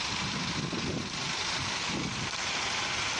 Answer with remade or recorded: recorded